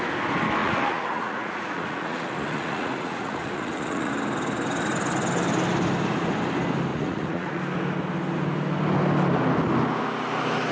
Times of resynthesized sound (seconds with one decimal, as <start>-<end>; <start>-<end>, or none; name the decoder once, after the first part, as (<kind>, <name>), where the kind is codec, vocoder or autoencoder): 0.6-4.1 (vocoder, Vocos); 6.9-7.6